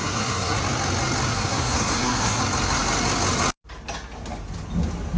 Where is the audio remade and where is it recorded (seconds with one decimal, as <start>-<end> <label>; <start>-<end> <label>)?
0.0-0.6 remade; 0.6-1.3 recorded; 1.3-2.4 remade; 2.4-5.2 recorded